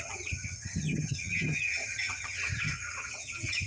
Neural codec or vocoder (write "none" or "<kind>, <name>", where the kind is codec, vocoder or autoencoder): vocoder, HiFi-GAN